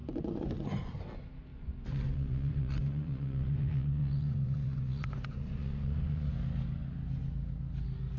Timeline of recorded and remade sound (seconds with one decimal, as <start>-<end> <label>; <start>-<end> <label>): 0.0-0.9 remade; 0.9-1.5 recorded; 1.5-6.3 remade; 6.3-8.2 recorded